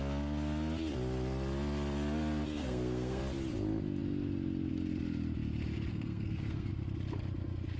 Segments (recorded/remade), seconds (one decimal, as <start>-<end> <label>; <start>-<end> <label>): 0.0-2.6 recorded; 2.6-3.2 remade; 3.2-5.9 recorded; 5.9-6.7 remade; 6.7-7.8 recorded